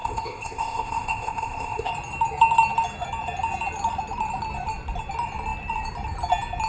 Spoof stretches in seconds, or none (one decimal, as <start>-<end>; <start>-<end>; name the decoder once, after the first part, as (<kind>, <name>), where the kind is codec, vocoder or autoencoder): 0.0-1.9 (codec, ZipCodec)